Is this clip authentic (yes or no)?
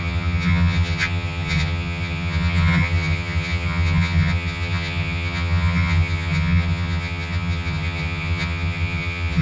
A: no